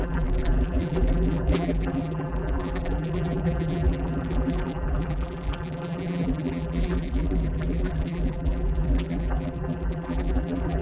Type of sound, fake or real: fake